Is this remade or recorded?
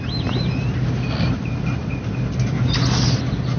recorded